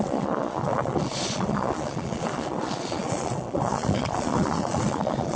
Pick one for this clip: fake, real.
fake